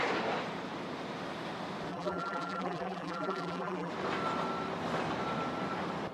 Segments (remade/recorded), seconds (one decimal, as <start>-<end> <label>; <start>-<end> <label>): 0.0-1.9 recorded; 1.9-3.9 remade; 3.9-6.1 recorded